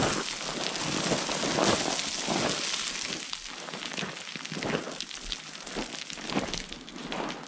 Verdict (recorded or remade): recorded